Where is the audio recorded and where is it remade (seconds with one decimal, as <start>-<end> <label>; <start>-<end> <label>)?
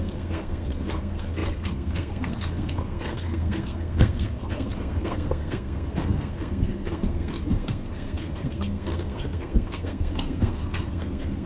0.0-11.5 remade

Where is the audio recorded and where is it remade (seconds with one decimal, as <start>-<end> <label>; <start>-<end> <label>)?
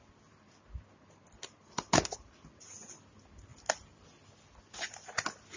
0.0-5.6 recorded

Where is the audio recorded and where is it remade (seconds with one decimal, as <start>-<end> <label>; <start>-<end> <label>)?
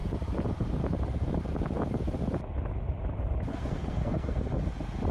0.0-3.5 recorded; 3.5-4.4 remade; 4.4-5.1 recorded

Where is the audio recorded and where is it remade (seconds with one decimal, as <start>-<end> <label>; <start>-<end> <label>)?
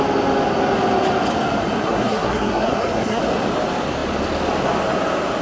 0.0-1.8 recorded; 1.8-3.2 remade; 3.2-5.4 recorded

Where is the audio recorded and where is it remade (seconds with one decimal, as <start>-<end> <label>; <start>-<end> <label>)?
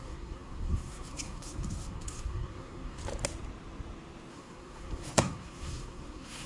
0.0-3.0 remade; 3.0-4.3 recorded; 4.3-6.5 remade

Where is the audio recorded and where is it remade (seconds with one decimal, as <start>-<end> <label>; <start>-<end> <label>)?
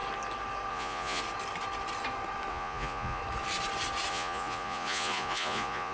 0.0-0.7 recorded; 0.7-1.2 remade; 1.2-2.5 recorded; 2.5-3.2 remade; 3.2-4.1 recorded; 4.1-5.9 remade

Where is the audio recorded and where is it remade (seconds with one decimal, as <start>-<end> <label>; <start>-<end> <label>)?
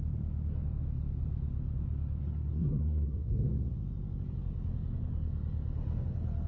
0.0-2.2 recorded; 2.2-3.5 remade; 3.5-6.5 recorded